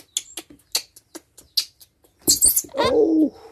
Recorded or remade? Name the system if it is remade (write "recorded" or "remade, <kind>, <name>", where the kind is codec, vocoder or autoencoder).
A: recorded